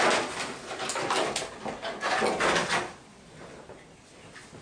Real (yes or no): yes